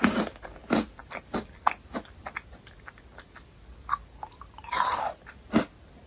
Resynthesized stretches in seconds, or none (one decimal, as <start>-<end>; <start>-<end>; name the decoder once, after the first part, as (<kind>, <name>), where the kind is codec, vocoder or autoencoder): none

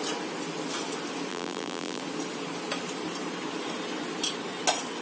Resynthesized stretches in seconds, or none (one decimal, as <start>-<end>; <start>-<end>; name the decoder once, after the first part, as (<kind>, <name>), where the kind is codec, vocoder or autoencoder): 1.3-2.0 (vocoder, BigVGAN v2)